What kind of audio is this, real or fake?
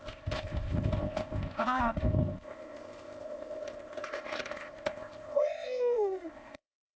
fake